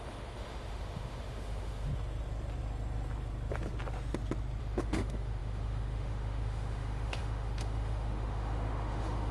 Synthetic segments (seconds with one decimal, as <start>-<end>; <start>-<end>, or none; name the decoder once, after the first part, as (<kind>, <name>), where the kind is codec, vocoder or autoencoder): 0.0-1.9 (autoencoder, DAC-VAE); 4.6-9.3